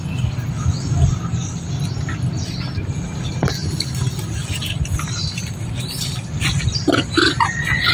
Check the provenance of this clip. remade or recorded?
recorded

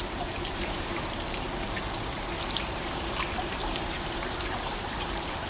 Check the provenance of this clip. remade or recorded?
remade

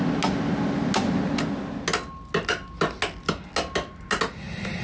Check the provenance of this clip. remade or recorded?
recorded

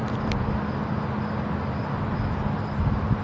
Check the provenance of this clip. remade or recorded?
recorded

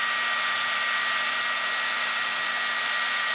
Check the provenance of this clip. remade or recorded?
recorded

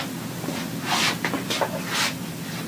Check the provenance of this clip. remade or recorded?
recorded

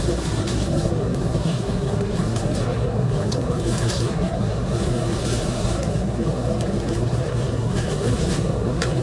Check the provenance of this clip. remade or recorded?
remade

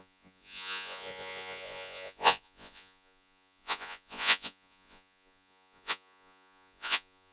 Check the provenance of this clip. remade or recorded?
remade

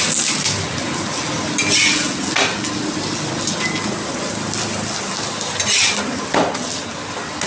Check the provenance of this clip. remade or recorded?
recorded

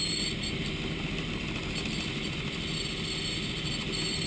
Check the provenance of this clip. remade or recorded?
recorded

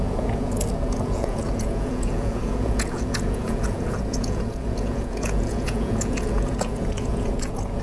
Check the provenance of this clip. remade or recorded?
remade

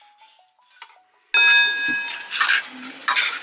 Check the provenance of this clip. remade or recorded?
recorded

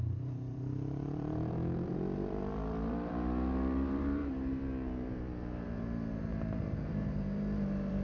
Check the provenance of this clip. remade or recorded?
remade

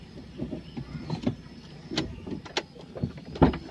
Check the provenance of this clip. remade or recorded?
recorded